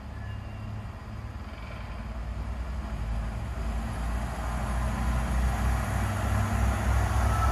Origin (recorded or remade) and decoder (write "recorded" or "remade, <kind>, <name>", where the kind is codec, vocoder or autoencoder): recorded